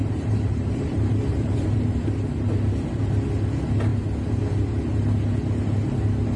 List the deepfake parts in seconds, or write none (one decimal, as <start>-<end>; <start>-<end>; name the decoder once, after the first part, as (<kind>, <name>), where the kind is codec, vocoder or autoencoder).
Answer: 0.0-1.9 (vocoder, BigVGAN v2)